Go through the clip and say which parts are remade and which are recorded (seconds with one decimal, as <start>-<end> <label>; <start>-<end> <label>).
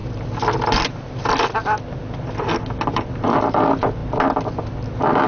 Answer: 0.0-5.3 recorded